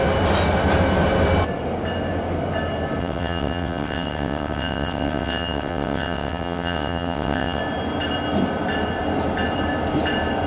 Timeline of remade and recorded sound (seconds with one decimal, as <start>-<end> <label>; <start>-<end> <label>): 0.0-3.0 recorded; 3.0-7.6 remade; 7.6-10.5 recorded